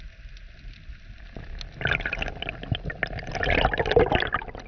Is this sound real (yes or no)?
yes